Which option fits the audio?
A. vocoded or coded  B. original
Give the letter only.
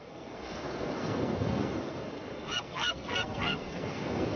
A